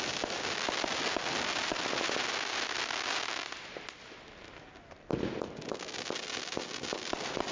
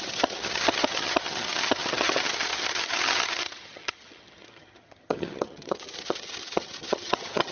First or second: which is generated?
second